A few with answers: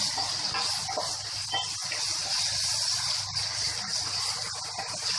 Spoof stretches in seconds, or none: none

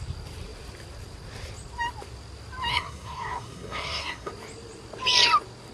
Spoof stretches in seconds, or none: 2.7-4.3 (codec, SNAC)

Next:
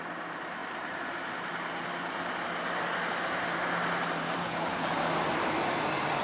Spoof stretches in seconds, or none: 4.4-4.9 (codec, HILCodec)

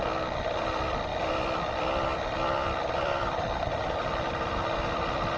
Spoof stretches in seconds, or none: 1.1-4.3 (vocoder, BigVGAN v2)